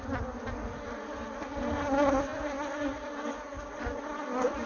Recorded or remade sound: recorded